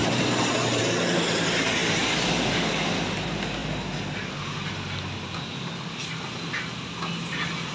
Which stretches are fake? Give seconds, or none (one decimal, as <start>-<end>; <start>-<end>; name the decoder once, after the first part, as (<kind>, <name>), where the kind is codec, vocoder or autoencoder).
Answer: 0.0-0.8 (vocoder, BigVGAN v2); 1.8-2.3; 3.6-4.7; 6.0-6.6